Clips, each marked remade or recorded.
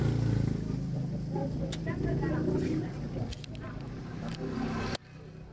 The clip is recorded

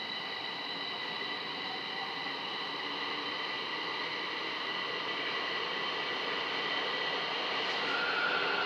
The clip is remade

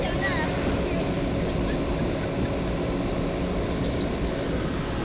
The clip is recorded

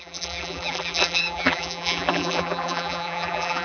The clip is remade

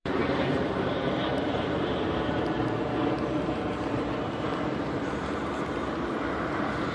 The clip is remade